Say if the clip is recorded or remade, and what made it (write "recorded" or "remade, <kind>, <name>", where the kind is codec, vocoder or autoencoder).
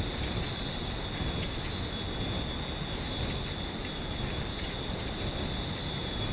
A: recorded